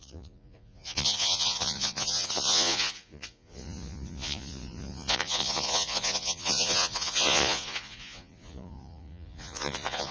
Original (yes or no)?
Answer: no